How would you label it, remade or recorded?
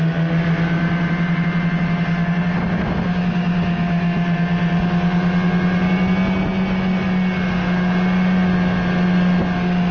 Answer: recorded